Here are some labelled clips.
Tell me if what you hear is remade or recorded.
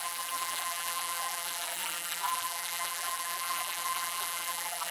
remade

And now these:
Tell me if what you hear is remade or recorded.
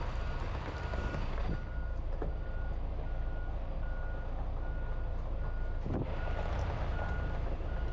recorded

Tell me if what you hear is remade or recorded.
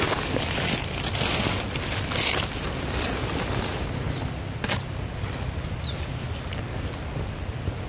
recorded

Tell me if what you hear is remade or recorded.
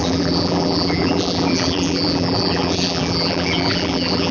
remade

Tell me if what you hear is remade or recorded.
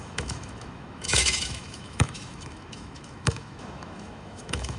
remade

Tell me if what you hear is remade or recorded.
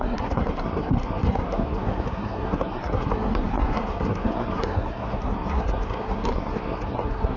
remade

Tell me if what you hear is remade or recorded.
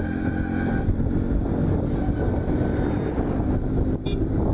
recorded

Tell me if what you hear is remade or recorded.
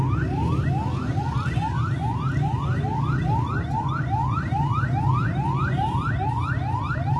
recorded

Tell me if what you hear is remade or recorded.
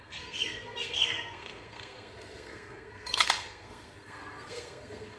remade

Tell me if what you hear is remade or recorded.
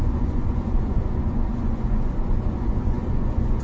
remade